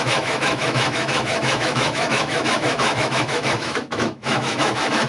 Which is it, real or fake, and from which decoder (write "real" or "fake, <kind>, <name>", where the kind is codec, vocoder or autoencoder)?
fake, autoencoder, DAC-VAE